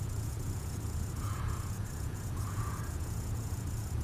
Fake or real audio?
fake